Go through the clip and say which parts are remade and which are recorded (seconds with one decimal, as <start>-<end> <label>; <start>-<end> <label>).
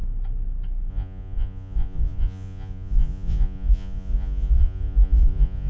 0.0-0.9 recorded; 0.9-5.7 remade